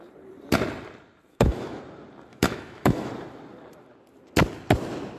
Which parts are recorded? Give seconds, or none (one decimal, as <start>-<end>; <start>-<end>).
0.0-1.3; 1.8-2.3; 3.1-5.2